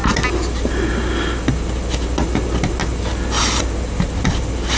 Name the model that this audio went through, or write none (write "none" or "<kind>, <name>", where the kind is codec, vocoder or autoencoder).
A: none